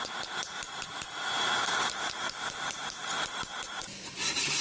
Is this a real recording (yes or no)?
no